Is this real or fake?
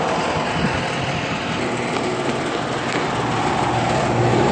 real